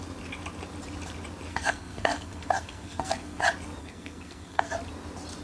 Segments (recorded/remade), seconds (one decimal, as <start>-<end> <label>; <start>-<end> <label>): 0.0-1.5 recorded; 1.5-3.4 remade; 3.4-3.8 recorded; 3.8-4.7 remade; 4.7-5.4 recorded